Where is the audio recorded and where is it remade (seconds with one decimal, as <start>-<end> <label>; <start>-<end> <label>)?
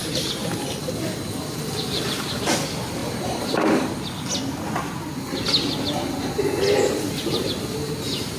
0.0-8.4 recorded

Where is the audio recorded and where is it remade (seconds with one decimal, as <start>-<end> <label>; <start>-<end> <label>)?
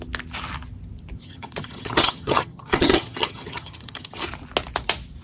0.0-1.2 recorded; 1.2-4.2 remade; 4.2-5.2 recorded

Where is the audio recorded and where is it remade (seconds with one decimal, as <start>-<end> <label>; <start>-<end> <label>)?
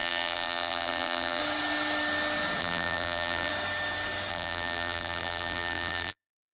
0.0-1.4 remade; 1.4-2.6 recorded; 2.6-3.5 remade; 3.5-4.3 recorded; 4.3-6.5 remade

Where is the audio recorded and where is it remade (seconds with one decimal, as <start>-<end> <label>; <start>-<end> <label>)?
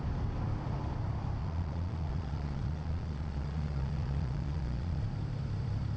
0.0-1.4 recorded; 1.4-5.0 remade; 5.0-6.0 recorded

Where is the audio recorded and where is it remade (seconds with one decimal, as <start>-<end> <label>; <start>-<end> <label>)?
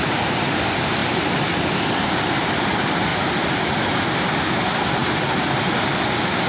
0.0-6.5 recorded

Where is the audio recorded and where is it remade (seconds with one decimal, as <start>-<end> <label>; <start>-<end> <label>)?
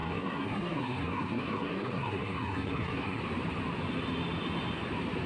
0.0-3.2 remade; 3.2-5.3 recorded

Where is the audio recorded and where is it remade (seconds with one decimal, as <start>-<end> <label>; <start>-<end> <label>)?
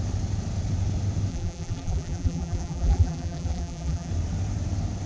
0.0-1.3 recorded; 1.3-4.1 remade; 4.1-5.1 recorded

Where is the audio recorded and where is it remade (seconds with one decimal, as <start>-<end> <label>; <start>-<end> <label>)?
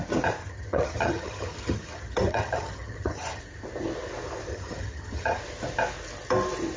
0.0-0.4 recorded; 0.4-3.4 remade; 3.4-4.5 recorded; 4.5-5.4 remade; 5.4-6.8 recorded